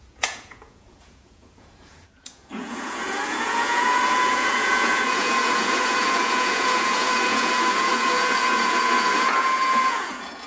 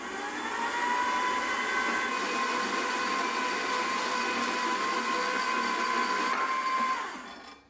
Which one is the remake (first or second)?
first